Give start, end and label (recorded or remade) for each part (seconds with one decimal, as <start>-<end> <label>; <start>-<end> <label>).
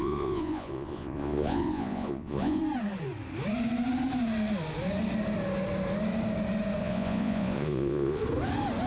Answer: 0.0-2.6 remade; 2.6-6.8 recorded; 6.8-8.2 remade; 8.2-8.9 recorded